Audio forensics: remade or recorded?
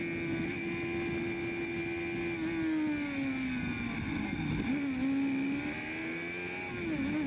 recorded